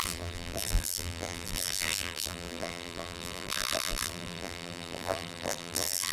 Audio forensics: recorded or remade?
remade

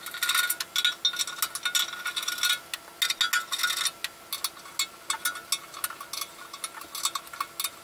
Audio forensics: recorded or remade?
recorded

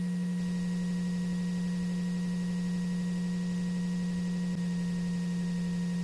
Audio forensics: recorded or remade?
recorded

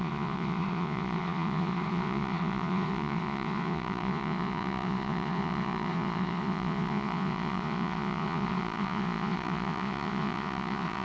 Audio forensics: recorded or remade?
remade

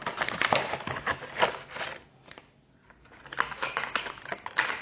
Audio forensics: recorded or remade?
recorded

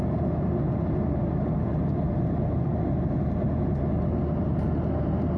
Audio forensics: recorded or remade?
recorded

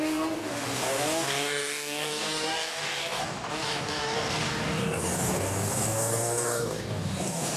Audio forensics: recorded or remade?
remade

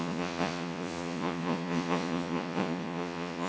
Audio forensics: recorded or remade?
remade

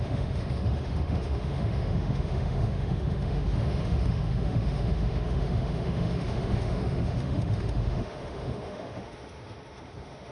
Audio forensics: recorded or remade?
remade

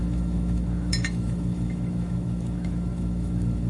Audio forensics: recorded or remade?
remade